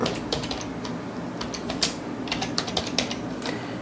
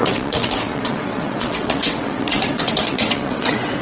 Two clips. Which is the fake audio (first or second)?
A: second